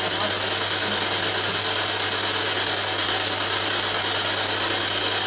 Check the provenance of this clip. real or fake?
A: real